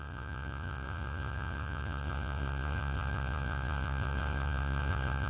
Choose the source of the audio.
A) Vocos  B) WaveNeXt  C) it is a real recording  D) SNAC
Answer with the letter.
A